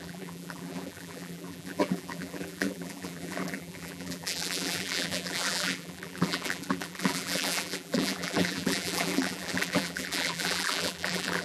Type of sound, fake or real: fake